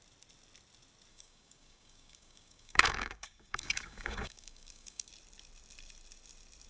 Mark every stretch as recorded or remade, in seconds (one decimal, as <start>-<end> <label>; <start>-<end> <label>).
0.0-1.1 recorded; 1.1-5.1 remade; 5.1-6.7 recorded